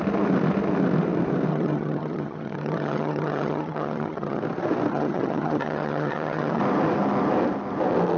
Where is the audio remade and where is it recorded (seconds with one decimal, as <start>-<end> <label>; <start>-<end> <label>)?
0.0-1.5 recorded; 1.5-4.4 remade; 4.4-4.9 recorded; 4.9-6.6 remade; 6.6-8.2 recorded